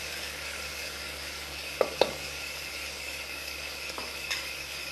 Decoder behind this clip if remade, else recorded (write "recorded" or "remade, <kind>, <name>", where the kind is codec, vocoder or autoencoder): remade, codec, DAC